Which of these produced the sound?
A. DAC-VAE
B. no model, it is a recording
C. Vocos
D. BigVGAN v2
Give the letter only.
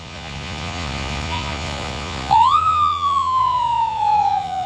C